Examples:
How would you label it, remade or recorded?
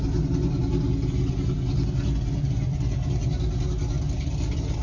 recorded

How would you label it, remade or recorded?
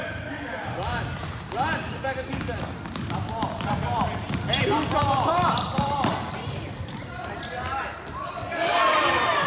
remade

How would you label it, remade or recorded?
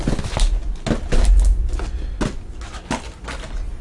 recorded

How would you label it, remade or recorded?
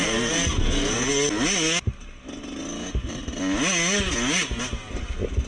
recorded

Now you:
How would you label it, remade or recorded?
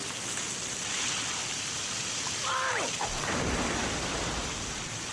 recorded